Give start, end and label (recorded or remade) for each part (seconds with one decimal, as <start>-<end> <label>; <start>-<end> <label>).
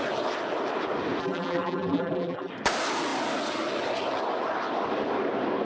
0.0-1.2 recorded; 1.2-2.5 remade; 2.5-5.6 recorded